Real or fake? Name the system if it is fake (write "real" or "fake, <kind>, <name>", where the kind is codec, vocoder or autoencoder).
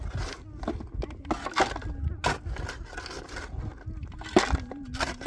real